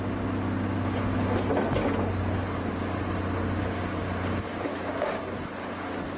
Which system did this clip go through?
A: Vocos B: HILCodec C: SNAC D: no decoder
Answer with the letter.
D